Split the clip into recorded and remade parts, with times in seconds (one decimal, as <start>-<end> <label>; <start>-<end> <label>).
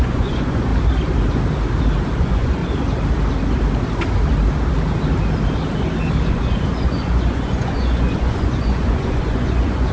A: 0.0-0.7 remade; 0.7-2.2 recorded; 2.2-2.6 remade; 2.6-6.3 recorded; 6.3-9.9 remade